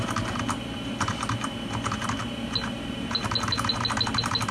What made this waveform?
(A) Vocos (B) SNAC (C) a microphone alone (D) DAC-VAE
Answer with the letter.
C